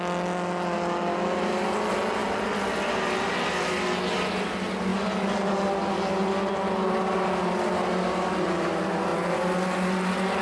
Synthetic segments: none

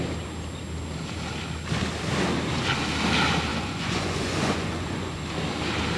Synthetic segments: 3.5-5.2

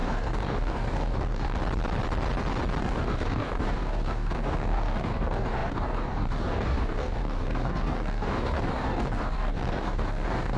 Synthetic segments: 0.0-1.6; 2.8-10.6

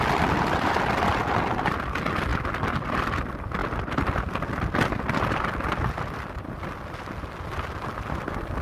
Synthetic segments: none

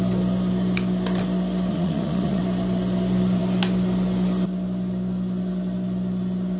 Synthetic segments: 1.7-2.4